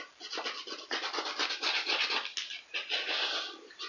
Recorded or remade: recorded